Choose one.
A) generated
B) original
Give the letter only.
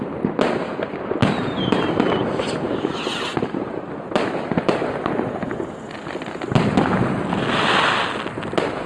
B